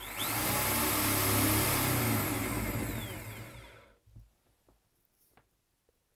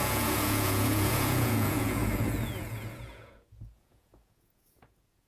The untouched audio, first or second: first